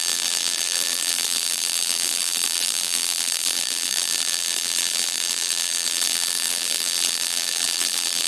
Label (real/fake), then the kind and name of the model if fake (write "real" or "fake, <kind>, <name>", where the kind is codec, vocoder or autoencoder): fake, vocoder, BigVGAN v2